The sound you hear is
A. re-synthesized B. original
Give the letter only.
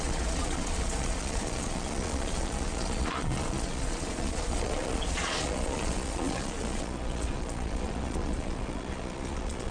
A